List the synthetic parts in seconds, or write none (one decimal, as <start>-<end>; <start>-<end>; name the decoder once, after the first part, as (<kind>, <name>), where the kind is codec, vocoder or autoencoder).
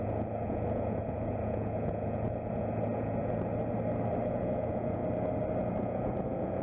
0.0-3.5 (vocoder, Vocos); 4.3-5.0; 5.8-6.6